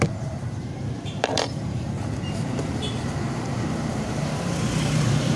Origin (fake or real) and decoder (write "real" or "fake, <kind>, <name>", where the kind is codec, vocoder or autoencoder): fake, vocoder, BigVGAN v2